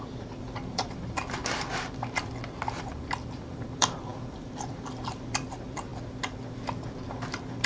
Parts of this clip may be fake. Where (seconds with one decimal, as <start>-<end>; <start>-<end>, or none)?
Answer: 0.0-1.4; 2.8-5.9